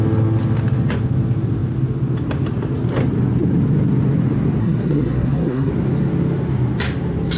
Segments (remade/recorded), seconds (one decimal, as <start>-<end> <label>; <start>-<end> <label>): 0.0-4.6 recorded; 4.6-5.7 remade; 5.7-7.4 recorded